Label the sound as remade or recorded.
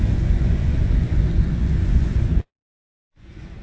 remade